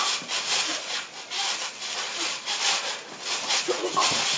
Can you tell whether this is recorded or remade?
recorded